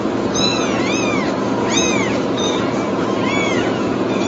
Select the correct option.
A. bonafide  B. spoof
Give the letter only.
B